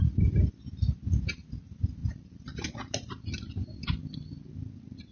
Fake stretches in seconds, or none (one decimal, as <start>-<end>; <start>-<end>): 2.0-5.1